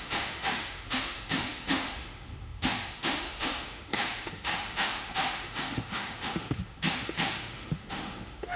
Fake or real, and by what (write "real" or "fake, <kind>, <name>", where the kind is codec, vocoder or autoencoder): fake, autoencoder, DAC-VAE